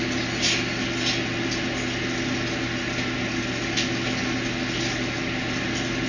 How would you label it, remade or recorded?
recorded